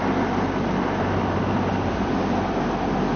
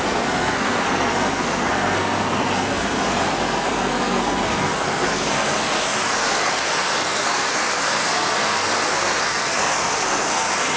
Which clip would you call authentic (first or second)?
first